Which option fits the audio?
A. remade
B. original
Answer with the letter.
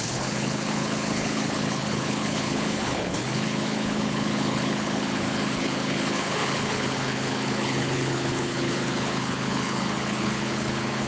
A